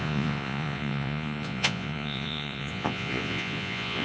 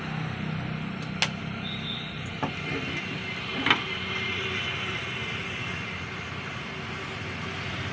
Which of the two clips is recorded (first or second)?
second